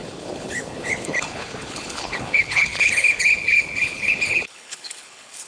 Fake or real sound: fake